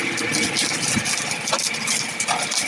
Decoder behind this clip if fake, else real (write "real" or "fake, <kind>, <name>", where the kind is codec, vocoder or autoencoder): real